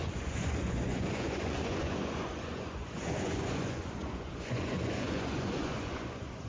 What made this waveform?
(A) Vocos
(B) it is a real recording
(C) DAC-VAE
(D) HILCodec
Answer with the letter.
A